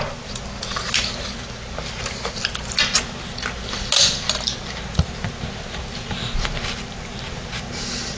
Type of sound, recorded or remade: recorded